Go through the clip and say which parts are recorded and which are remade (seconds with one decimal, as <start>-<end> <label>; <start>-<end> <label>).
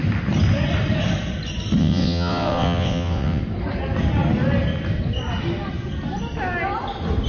0.0-1.8 recorded; 1.8-3.4 remade; 3.4-7.3 recorded